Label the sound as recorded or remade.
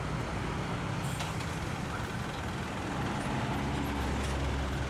recorded